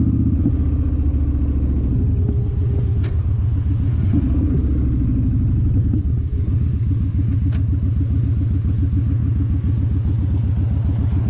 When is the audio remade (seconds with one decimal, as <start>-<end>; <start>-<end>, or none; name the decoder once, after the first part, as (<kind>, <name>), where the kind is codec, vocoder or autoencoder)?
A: none